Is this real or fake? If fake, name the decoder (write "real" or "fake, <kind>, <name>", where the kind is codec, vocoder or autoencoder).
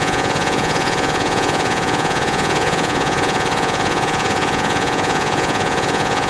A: fake, vocoder, Vocos